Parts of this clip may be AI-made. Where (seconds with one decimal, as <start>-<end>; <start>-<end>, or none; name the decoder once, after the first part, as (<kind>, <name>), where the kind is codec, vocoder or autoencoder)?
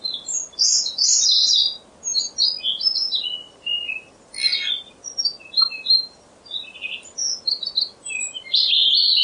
none